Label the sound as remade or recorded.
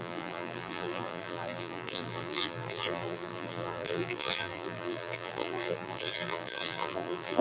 remade